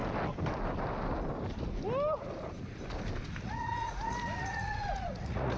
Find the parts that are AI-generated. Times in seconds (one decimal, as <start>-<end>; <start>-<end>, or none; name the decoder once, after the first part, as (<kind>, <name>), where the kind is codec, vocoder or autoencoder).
3.4-5.6 (vocoder, Vocos)